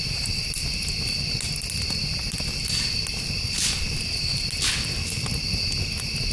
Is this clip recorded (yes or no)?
yes